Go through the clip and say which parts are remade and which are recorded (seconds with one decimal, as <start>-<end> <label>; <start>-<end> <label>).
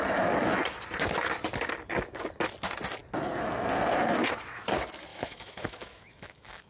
0.0-5.1 recorded; 5.1-6.7 remade